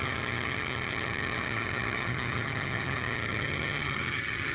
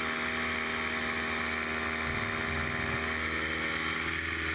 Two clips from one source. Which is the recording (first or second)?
second